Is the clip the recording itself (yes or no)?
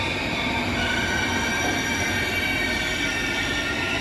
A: yes